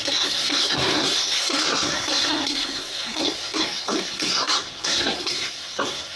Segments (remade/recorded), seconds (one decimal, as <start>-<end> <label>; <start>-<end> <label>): 0.0-6.2 remade